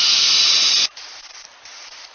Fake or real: fake